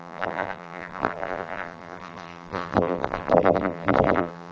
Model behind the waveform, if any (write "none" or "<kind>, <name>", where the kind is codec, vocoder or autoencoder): vocoder, BigVGAN v2